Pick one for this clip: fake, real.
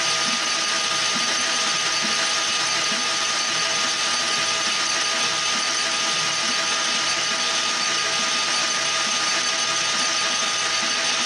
real